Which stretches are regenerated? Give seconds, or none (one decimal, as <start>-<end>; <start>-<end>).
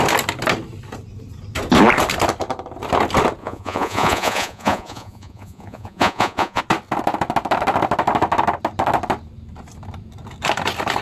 3.4-6.6